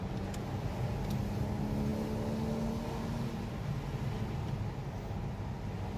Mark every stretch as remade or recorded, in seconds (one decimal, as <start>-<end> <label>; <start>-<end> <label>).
0.0-6.0 recorded